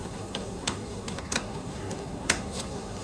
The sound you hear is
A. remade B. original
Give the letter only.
A